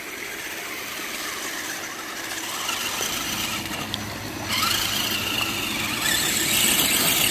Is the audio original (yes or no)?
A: yes